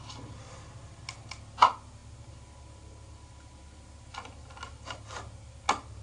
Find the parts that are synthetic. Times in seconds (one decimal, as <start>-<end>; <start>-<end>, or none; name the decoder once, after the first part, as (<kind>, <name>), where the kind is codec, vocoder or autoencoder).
none